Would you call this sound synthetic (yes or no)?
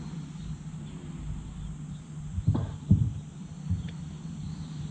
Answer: no